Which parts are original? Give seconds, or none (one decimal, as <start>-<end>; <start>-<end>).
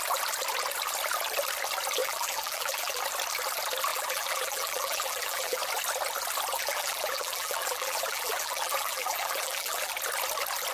0.0-2.0; 3.0-3.9; 5.6-6.5; 9.9-10.7